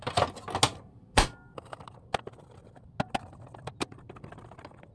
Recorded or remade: recorded